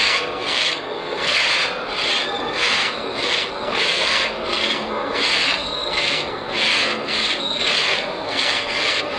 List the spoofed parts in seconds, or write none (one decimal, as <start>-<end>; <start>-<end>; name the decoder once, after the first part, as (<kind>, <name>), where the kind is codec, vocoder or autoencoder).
0.0-1.4 (codec, SNAC); 2.4-9.2